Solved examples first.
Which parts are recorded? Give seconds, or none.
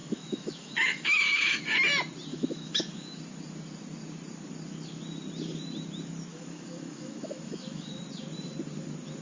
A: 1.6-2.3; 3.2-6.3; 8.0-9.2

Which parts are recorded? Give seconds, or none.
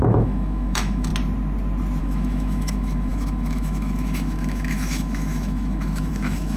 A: 1.1-2.0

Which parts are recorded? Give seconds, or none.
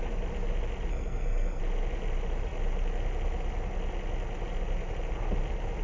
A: 0.0-0.9; 1.6-5.8